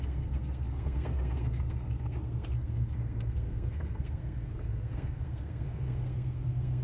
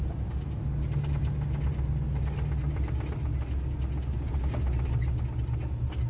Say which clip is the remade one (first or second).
first